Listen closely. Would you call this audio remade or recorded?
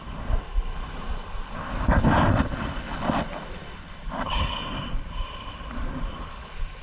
recorded